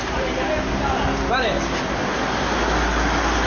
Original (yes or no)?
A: yes